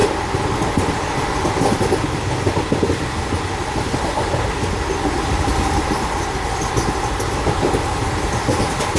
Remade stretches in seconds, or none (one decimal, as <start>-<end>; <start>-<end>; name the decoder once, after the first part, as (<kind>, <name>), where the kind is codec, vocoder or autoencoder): none